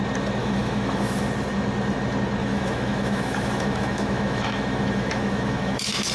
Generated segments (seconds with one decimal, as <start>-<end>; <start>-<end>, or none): 0.4-1.2; 2.4-6.1